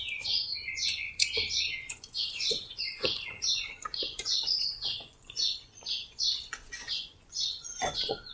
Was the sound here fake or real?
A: fake